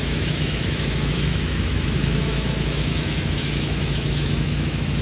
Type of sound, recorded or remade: remade